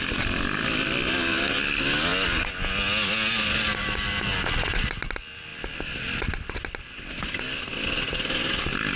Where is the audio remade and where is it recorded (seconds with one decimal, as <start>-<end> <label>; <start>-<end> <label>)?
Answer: 0.0-9.0 recorded